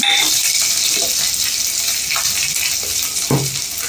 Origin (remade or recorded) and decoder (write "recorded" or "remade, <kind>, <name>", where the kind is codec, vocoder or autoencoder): recorded